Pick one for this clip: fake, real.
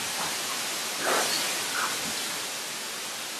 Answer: real